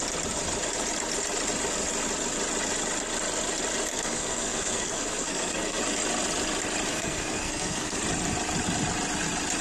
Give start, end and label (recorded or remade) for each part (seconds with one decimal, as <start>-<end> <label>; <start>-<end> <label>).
0.0-3.9 recorded; 3.9-5.8 remade; 5.8-6.9 recorded; 6.9-8.0 remade; 8.0-9.6 recorded